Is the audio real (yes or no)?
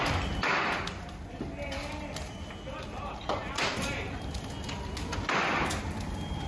yes